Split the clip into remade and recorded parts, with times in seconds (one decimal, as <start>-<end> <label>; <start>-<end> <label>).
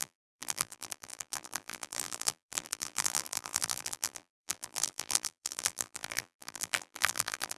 0.0-7.6 remade